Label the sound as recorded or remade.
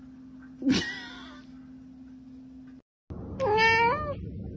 recorded